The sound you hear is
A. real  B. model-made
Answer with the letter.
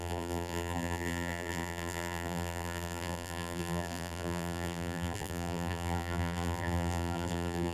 B